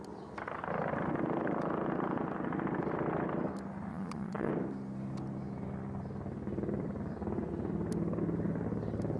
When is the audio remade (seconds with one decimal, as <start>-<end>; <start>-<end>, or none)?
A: 3.9-4.5